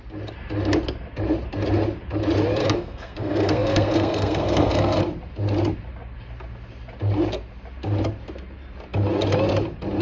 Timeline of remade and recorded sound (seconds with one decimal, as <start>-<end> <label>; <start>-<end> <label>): 0.0-2.6 recorded; 2.6-5.0 remade; 5.0-10.0 recorded